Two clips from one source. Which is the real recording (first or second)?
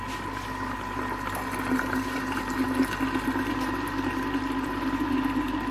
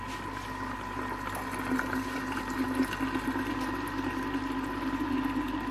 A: second